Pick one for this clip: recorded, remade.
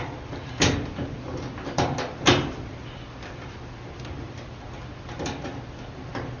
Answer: remade